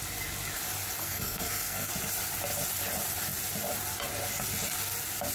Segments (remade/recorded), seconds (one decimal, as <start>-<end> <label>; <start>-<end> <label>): 0.0-1.0 recorded; 1.0-1.9 remade; 1.9-5.3 recorded